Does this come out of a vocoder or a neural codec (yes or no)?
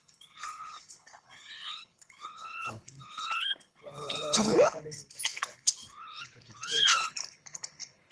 yes